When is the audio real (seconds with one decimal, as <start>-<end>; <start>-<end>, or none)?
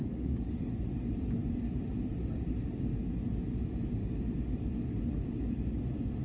0.7-6.2